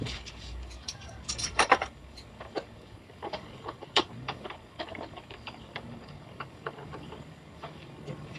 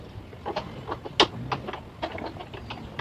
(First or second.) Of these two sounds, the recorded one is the second